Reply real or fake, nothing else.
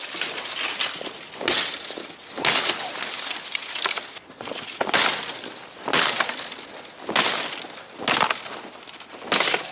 real